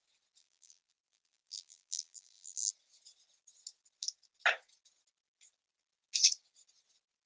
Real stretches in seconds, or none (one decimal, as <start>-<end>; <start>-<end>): 0.0-0.4; 2.7-7.3

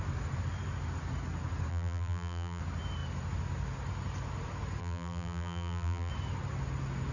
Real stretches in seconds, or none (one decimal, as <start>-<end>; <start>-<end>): 0.0-1.7; 2.6-4.8; 6.1-7.1

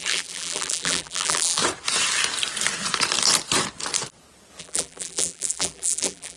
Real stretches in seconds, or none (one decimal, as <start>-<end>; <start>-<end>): 1.6-4.6

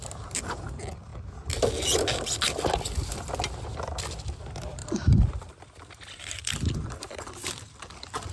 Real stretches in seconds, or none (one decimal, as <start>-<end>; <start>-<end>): 0.0-4.8

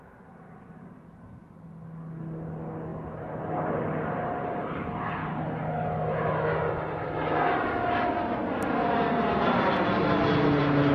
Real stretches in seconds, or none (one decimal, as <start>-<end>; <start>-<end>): 0.0-10.9

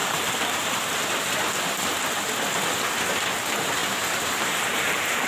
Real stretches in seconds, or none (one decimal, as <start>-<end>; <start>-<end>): 0.9-3.8

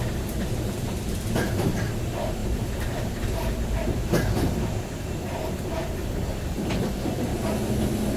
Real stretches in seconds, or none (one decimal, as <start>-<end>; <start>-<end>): 7.3-8.2

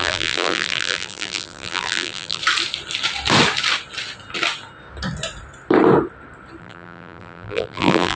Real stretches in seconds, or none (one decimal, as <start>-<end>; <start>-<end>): 2.4-6.6